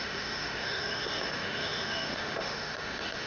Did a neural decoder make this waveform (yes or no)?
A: yes